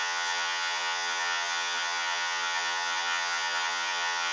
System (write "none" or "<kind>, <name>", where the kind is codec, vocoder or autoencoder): vocoder, HiFi-GAN